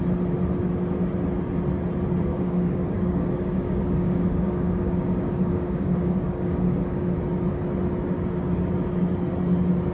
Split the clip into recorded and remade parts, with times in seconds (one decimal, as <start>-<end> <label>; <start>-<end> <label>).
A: 0.0-2.3 recorded; 2.3-7.2 remade; 7.2-9.9 recorded